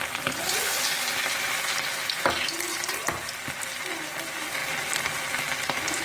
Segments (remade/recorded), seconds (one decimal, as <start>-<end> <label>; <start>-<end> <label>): 0.0-2.7 recorded; 2.7-3.6 remade; 3.6-6.0 recorded